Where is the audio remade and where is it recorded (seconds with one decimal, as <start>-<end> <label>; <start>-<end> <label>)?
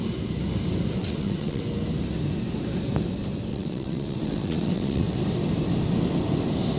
0.0-1.0 recorded; 1.0-1.6 remade; 1.6-3.5 recorded; 3.5-5.2 remade; 5.2-6.8 recorded